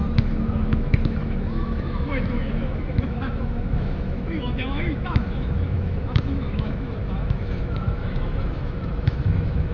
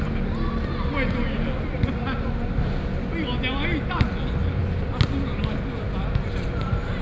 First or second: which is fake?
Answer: first